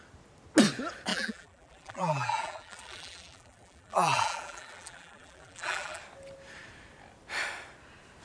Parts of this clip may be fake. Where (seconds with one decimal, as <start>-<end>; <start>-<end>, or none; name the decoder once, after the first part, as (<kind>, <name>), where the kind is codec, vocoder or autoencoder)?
1.1-6.0 (vocoder, BigVGAN v2)